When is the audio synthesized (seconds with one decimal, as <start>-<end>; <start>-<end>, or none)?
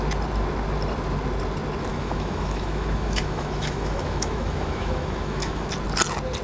1.9-5.7